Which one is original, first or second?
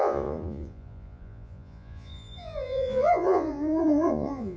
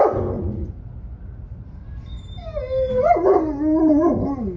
second